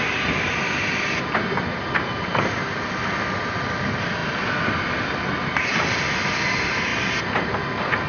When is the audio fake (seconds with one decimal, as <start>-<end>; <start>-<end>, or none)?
none